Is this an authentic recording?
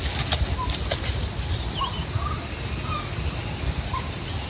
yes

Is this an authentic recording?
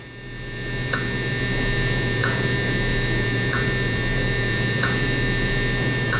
no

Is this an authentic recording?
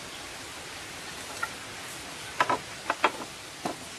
yes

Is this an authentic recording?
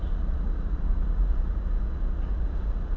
no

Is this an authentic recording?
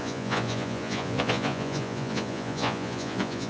no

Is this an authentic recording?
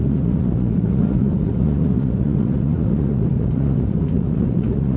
no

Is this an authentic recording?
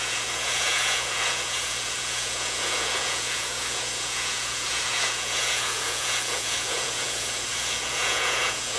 no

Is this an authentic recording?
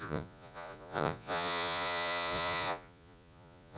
no